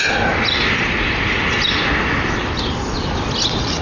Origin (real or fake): real